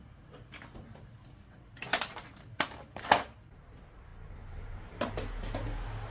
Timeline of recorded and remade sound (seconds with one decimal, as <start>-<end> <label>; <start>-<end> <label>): 0.0-1.9 recorded; 1.9-3.0 remade; 3.0-4.1 recorded; 4.1-5.1 remade; 5.1-6.1 recorded